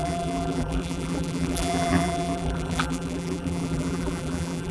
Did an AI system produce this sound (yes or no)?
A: yes